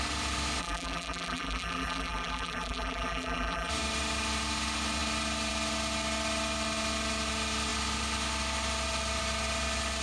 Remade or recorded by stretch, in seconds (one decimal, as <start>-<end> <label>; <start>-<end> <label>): 0.0-0.6 recorded; 0.6-3.7 remade; 3.7-10.0 recorded